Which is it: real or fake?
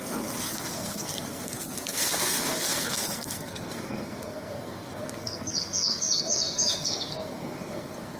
fake